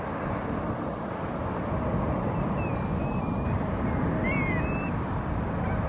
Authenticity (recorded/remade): recorded